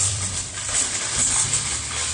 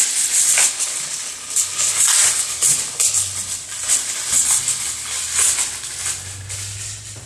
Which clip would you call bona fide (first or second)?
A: second